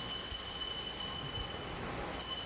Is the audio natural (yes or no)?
yes